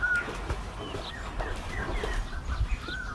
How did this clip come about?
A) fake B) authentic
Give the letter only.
B